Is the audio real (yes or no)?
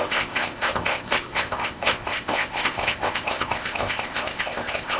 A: no